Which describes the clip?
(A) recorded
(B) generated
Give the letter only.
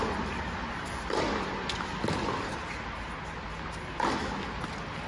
A